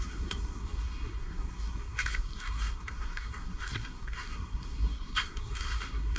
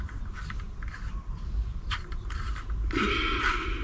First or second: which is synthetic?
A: first